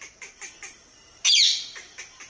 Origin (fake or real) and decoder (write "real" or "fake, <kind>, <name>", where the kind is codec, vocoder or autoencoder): real